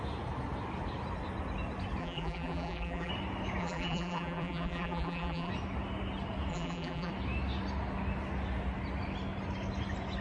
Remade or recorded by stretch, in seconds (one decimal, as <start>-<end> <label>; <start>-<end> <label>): 0.0-2.0 recorded; 2.0-3.1 remade; 3.1-3.6 recorded; 3.6-5.5 remade; 5.5-6.5 recorded; 6.5-7.1 remade; 7.1-10.2 recorded

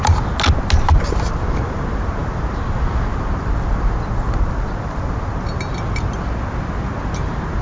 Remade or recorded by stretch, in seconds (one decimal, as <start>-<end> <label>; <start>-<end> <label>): 0.0-7.6 recorded

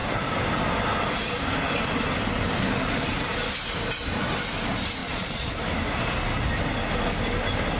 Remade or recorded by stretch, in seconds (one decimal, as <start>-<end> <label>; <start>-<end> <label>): 0.0-5.0 recorded; 5.0-5.5 remade; 5.5-7.8 recorded